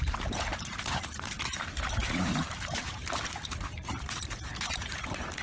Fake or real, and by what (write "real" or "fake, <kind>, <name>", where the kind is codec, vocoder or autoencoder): fake, vocoder, BigVGAN v2